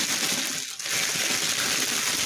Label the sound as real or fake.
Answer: real